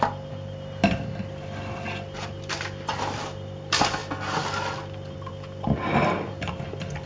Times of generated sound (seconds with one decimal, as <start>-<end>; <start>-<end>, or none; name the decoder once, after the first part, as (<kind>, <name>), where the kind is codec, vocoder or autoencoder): none

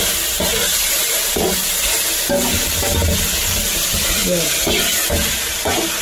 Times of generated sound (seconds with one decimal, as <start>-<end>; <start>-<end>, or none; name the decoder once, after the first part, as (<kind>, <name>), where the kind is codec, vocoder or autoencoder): 0.5-1.2 (vocoder, BigVGAN v2)

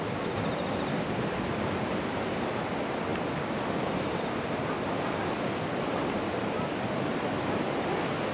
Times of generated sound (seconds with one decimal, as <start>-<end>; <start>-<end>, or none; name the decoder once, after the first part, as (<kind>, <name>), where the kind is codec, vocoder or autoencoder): none